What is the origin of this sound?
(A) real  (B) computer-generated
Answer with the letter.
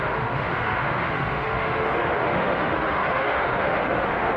B